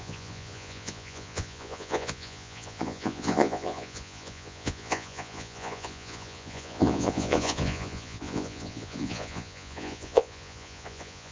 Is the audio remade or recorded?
remade